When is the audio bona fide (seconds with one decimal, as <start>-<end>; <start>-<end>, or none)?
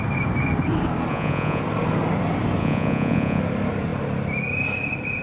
0.0-1.1; 1.6-2.6; 3.4-5.2